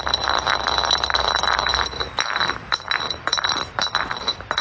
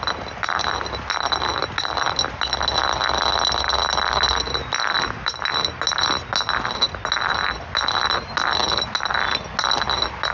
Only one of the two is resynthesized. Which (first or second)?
first